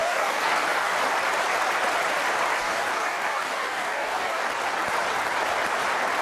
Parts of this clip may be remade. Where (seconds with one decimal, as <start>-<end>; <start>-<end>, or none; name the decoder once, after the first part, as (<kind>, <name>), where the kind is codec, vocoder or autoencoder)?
0.0-0.9 (codec, DAC); 2.6-4.5